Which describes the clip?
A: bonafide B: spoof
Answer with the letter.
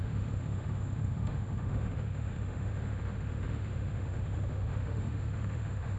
B